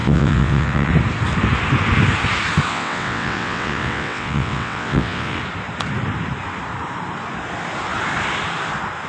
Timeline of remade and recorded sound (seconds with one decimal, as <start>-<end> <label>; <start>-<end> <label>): 0.0-0.9 remade; 0.9-2.7 recorded; 2.7-5.4 remade; 5.4-9.1 recorded